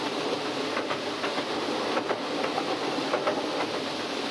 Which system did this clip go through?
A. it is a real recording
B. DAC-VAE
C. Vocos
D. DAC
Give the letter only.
A